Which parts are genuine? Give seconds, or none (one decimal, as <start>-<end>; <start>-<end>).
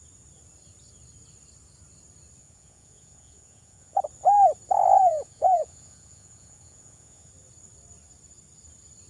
0.0-2.4; 4.0-4.9; 7.3-9.1